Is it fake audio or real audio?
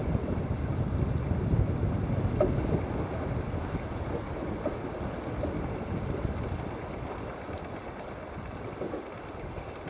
real